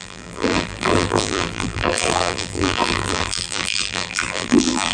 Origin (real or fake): fake